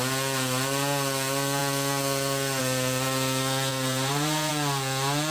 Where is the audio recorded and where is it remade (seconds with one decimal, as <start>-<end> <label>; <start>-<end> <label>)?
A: 0.0-3.7 recorded; 3.7-4.5 remade; 4.5-5.3 recorded